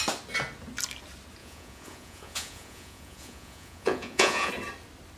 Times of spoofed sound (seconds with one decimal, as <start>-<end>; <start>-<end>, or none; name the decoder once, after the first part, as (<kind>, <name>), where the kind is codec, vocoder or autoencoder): 1.4-4.5 (vocoder, Vocos)